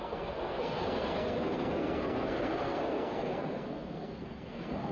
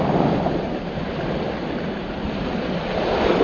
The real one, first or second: second